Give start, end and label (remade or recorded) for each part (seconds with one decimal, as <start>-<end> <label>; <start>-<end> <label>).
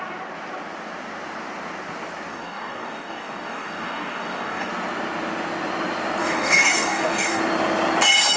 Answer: 0.0-2.3 recorded; 2.3-4.7 remade; 4.7-6.2 recorded; 6.2-7.4 remade; 7.4-8.4 recorded